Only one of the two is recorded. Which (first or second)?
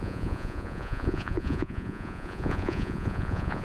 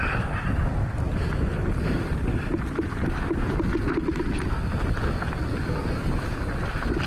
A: second